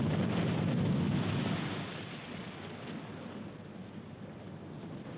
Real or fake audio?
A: real